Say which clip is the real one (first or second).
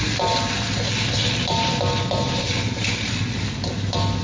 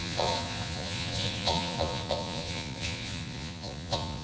first